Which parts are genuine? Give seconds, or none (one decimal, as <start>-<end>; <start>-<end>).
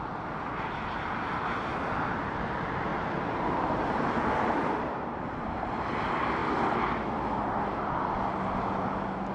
0.0-2.9; 5.8-9.3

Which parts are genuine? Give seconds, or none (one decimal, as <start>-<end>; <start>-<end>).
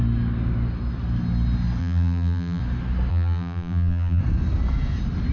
0.0-1.8; 2.6-3.1; 4.2-5.3